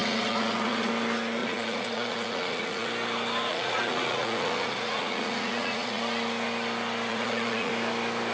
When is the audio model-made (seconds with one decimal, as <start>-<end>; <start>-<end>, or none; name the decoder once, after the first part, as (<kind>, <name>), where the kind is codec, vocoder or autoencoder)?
0.0-0.9 (vocoder, Vocos); 1.4-2.9; 3.5-6.0; 7.1-7.7